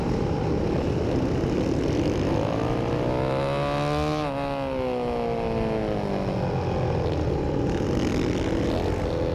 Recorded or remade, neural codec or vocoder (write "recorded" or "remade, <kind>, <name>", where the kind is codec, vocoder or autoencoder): recorded